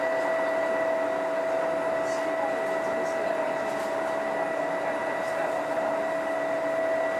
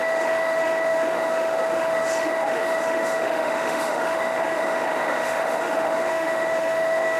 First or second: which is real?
first